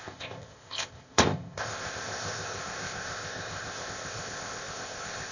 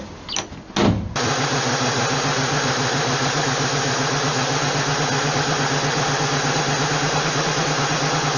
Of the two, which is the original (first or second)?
second